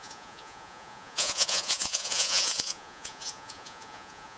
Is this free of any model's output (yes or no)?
no